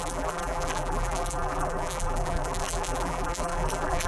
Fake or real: fake